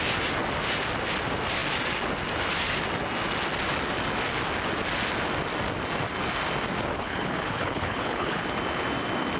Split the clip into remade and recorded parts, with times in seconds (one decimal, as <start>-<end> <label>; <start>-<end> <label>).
0.0-6.9 recorded; 6.9-8.4 remade; 8.4-9.4 recorded